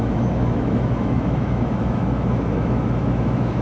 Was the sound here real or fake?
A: fake